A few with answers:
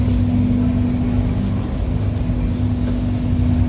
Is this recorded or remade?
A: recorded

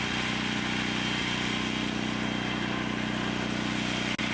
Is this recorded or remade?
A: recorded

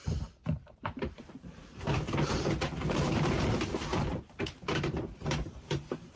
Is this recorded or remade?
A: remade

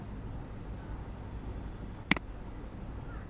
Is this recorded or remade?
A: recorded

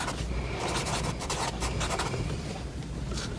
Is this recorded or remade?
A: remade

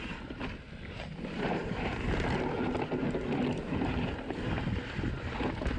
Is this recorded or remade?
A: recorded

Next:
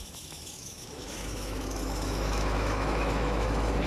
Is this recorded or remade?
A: remade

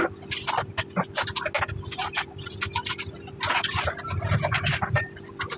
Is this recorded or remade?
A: recorded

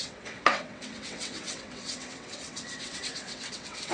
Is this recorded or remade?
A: remade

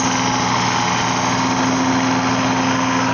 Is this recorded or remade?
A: recorded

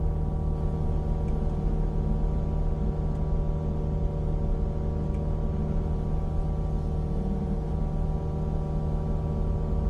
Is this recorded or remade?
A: recorded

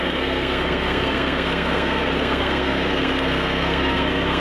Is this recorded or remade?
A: remade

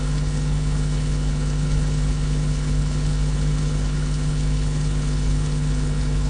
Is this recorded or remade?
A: remade